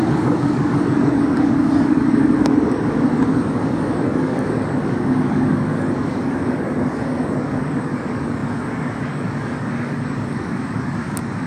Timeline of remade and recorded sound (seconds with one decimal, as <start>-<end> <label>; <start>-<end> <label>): 0.0-11.5 remade